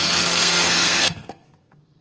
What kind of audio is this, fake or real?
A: fake